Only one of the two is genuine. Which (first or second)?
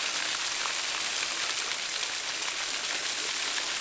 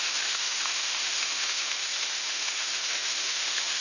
first